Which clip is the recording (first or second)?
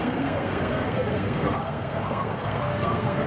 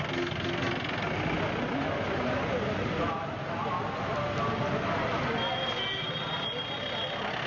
second